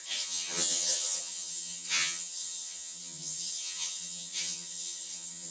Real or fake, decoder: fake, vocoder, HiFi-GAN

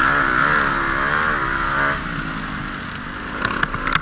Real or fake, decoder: real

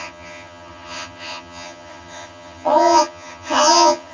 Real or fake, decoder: fake, vocoder, HiFi-GAN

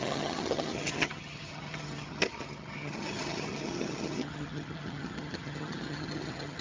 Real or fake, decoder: fake, vocoder, HiFi-GAN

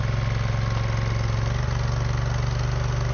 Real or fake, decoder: real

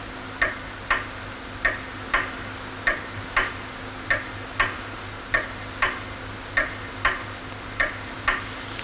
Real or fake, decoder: real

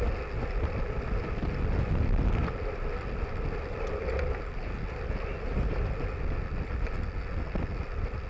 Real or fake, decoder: real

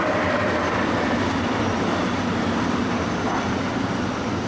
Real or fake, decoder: real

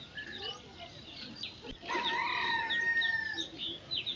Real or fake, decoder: real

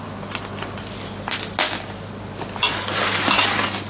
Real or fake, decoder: real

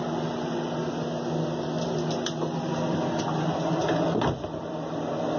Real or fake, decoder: real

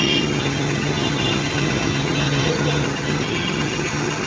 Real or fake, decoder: fake, vocoder, HiFi-GAN